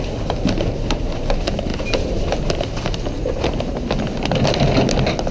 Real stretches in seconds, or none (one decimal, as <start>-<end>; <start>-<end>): 0.0-5.3